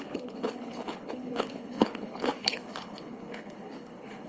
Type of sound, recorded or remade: remade